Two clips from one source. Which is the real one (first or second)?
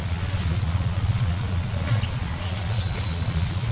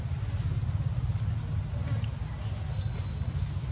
second